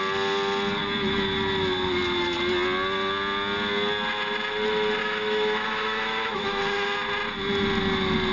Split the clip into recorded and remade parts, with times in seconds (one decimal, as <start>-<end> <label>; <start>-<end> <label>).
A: 0.0-5.0 recorded; 5.0-6.6 remade; 6.6-8.3 recorded